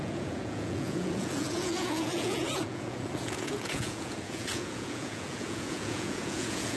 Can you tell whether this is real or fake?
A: fake